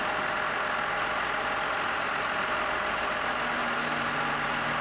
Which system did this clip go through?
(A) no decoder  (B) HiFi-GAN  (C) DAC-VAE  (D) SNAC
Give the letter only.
A